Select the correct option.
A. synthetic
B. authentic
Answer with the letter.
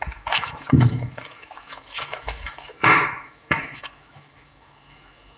A